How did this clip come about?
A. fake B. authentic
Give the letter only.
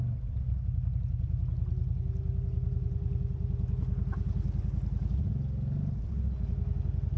B